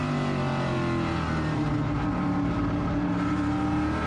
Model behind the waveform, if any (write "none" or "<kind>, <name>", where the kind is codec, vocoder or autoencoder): none